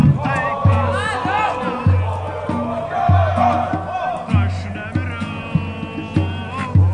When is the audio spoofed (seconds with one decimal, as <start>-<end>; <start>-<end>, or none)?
none